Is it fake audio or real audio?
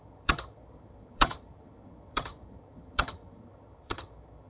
fake